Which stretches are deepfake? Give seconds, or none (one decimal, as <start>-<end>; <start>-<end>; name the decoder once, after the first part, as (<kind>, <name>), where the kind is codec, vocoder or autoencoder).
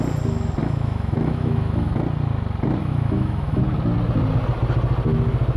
0.6-2.0 (autoencoder, DAC-VAE); 2.8-3.6